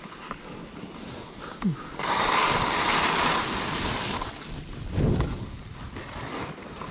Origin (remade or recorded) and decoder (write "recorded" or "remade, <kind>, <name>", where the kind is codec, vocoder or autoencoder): recorded